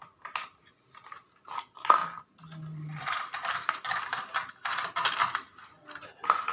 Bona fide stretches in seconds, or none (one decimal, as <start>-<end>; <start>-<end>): 0.0-6.5